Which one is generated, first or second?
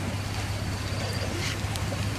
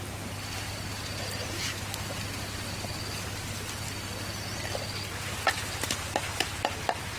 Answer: first